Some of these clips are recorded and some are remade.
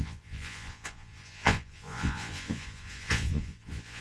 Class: remade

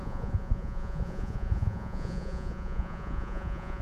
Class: remade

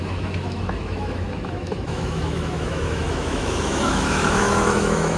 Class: remade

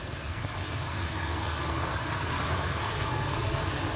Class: remade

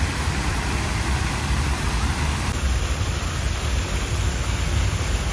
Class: recorded